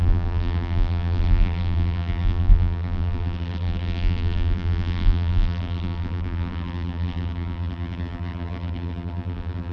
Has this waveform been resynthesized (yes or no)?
yes